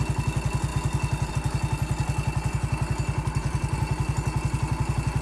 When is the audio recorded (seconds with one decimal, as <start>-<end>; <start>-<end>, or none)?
0.0-5.2